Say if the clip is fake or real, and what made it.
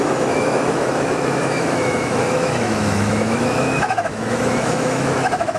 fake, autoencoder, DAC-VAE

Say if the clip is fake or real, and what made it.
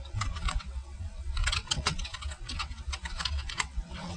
fake, vocoder, WaveNeXt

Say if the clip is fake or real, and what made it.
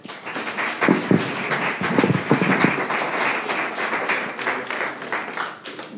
real